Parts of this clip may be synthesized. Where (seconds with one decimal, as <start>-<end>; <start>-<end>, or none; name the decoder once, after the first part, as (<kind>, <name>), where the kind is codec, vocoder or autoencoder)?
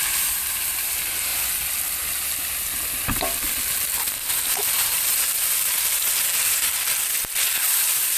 0.0-1.3 (vocoder, BigVGAN v2); 4.5-6.6; 7.6-8.2